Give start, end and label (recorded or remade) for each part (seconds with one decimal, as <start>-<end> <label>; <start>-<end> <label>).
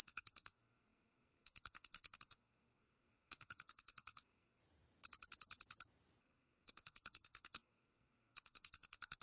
0.0-4.6 remade; 4.6-6.2 recorded; 6.2-9.2 remade